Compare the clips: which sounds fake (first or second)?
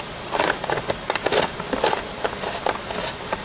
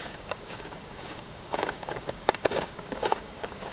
second